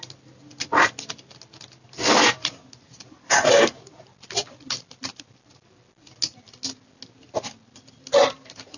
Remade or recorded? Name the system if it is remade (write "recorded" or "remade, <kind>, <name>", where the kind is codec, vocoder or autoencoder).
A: recorded